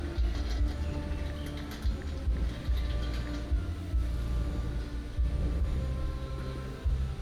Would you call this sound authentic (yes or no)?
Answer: yes